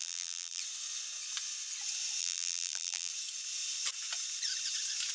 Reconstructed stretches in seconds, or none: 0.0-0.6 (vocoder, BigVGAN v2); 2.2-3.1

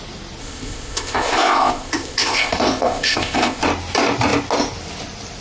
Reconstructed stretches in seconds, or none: 0.4-3.6 (codec, ZipCodec)

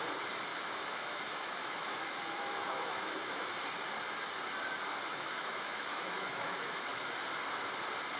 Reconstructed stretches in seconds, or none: 0.5-3.5 (autoencoder, DAC-VAE); 5.1-6.9

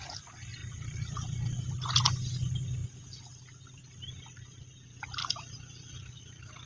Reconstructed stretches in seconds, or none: none

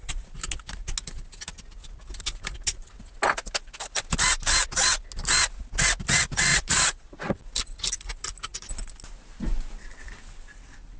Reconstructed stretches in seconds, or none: 6.5-7.3 (vocoder, Vocos)